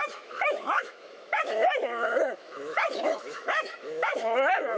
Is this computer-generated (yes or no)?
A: yes